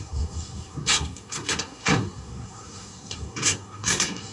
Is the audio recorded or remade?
remade